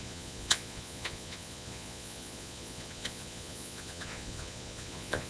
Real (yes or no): no